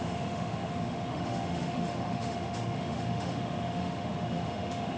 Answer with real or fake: fake